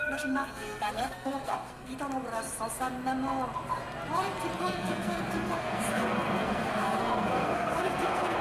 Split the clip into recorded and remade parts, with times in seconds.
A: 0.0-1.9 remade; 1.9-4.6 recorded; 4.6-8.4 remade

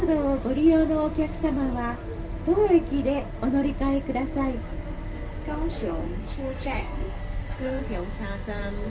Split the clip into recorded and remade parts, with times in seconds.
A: 0.0-6.0 recorded; 6.0-7.8 remade; 7.8-8.9 recorded

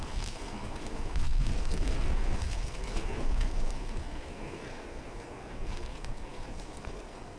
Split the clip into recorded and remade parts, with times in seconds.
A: 0.0-7.4 remade

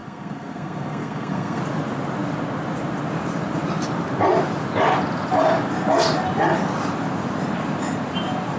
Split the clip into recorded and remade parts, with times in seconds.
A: 0.0-1.6 remade; 1.6-8.6 recorded

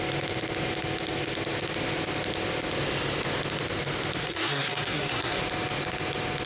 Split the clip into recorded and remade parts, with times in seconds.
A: 0.0-4.2 recorded; 4.2-5.4 remade; 5.4-6.5 recorded